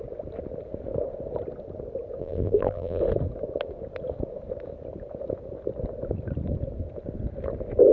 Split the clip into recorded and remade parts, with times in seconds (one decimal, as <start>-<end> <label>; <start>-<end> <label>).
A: 0.0-2.2 recorded; 2.2-3.0 remade; 3.0-7.9 recorded